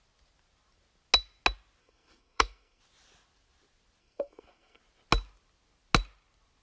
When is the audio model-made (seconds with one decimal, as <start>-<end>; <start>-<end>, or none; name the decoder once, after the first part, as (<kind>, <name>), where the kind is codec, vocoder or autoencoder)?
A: 1.8-2.8 (codec, SNAC); 4.0-4.8